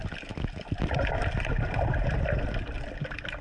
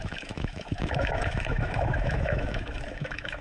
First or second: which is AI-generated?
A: second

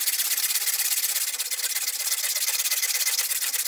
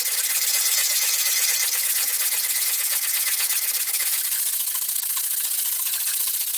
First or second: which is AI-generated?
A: second